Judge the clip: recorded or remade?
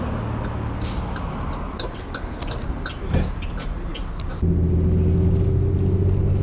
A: recorded